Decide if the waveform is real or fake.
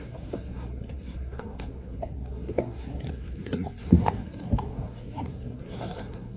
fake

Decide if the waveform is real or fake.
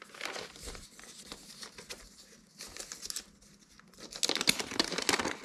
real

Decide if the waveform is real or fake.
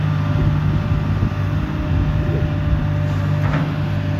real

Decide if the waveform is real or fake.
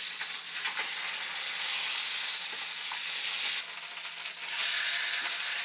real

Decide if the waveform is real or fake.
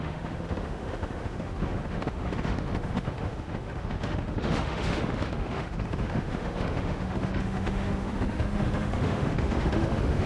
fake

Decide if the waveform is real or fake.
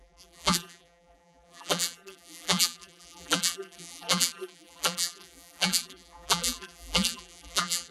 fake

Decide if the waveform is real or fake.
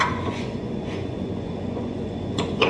fake